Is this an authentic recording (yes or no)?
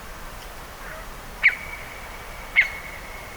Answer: no